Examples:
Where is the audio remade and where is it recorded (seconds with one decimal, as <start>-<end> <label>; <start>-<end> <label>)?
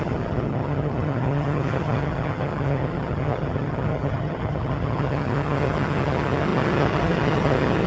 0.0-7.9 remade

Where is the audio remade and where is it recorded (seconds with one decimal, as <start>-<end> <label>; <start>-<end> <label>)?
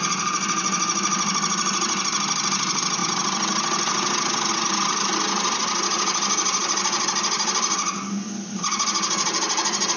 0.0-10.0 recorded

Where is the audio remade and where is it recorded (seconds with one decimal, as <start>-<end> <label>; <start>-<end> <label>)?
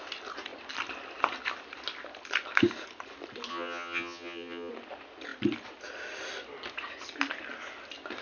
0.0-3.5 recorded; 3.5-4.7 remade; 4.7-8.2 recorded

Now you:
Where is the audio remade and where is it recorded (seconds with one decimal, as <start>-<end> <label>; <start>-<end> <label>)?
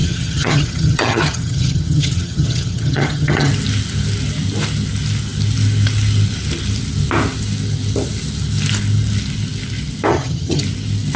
0.0-3.5 remade; 3.5-10.1 recorded; 10.1-10.6 remade; 10.6-11.2 recorded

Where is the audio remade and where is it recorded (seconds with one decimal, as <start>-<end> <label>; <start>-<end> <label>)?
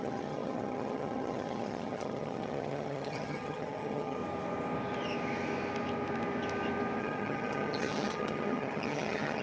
0.0-4.2 remade; 4.2-7.0 recorded; 7.0-9.4 remade